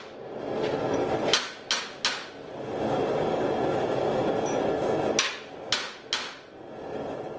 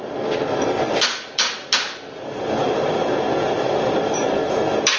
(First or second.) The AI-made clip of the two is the second